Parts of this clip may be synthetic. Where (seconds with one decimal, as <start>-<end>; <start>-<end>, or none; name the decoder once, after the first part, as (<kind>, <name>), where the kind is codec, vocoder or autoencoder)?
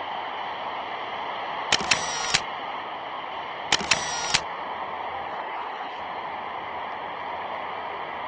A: 5.3-6.0 (codec, HILCodec)